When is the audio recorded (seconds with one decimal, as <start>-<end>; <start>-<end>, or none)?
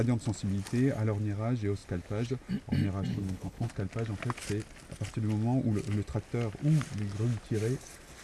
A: 0.0-3.1; 3.7-8.2